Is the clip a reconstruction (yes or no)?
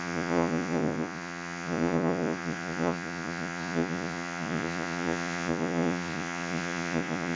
yes